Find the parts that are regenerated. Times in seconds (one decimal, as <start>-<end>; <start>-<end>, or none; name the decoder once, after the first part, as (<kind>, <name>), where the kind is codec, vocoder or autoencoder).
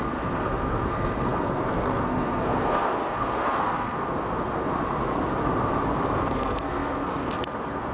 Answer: 0.0-4.8 (codec, SNAC); 6.2-7.9